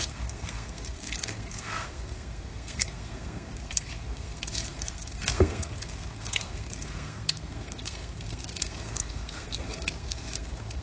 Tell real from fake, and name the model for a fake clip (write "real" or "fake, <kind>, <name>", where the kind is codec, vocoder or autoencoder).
fake, codec, SNAC